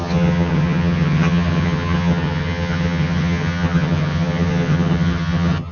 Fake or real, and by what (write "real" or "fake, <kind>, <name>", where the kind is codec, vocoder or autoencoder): fake, vocoder, HiFi-GAN